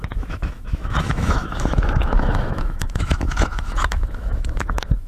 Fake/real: fake